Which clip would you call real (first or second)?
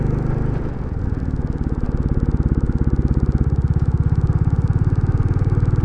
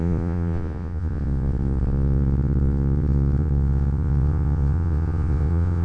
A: first